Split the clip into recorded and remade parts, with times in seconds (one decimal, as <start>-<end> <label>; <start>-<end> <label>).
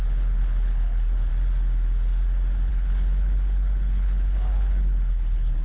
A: 0.0-1.3 remade; 1.3-2.7 recorded; 2.7-5.6 remade